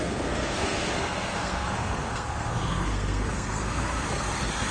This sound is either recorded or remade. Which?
remade